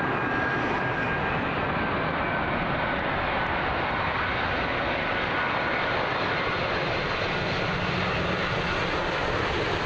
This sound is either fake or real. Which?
real